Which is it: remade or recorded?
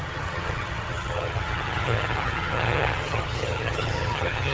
remade